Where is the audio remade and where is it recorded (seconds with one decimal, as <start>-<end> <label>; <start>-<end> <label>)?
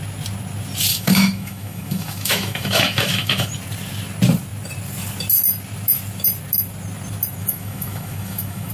0.0-0.9 recorded; 0.9-3.5 remade; 3.5-7.4 recorded; 7.4-8.7 remade